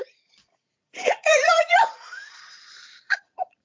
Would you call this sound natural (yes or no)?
no